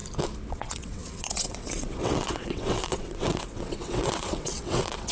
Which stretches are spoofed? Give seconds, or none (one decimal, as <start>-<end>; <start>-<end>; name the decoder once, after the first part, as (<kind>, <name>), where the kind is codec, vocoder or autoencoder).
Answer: 0.5-5.1 (vocoder, WaveNeXt)